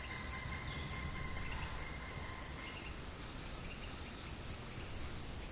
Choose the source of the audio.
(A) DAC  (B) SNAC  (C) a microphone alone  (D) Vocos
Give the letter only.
C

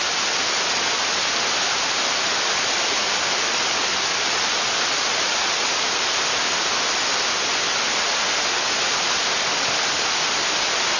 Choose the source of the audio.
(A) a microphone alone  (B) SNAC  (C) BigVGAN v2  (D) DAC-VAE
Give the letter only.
A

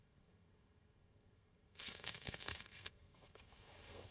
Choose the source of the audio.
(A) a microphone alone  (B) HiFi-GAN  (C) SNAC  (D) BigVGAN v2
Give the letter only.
C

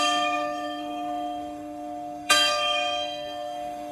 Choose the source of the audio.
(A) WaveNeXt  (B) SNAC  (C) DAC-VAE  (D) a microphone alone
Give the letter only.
B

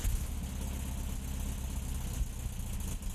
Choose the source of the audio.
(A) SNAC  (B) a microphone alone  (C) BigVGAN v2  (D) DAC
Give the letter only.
B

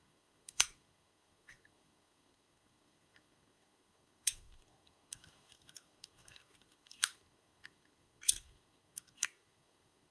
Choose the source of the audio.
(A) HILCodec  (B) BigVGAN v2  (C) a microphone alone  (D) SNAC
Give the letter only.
D